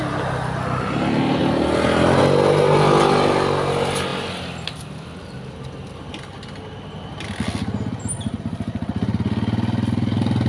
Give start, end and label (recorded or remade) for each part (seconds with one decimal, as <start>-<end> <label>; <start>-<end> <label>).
0.0-10.5 recorded